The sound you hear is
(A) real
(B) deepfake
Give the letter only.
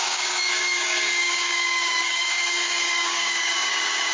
B